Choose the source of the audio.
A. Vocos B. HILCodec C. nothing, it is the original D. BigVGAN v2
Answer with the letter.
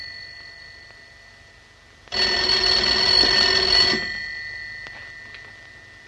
C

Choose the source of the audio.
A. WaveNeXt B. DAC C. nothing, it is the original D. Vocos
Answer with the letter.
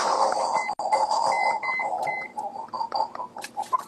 C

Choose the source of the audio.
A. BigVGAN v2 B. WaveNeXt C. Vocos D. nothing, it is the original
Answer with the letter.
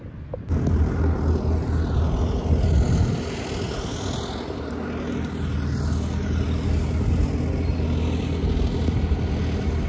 D